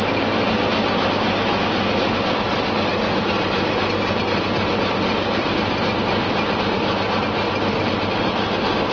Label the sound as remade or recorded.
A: recorded